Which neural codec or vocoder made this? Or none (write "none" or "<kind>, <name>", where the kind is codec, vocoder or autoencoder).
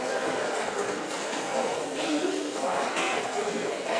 codec, SNAC